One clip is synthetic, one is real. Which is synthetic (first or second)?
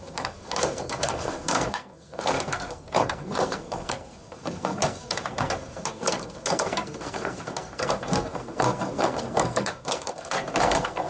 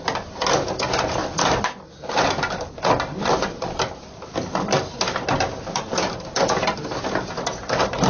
first